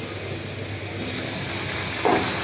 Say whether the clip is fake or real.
real